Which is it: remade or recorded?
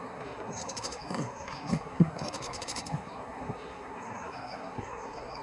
remade